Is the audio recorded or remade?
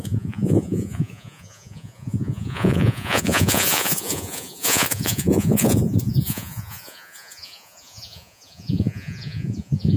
remade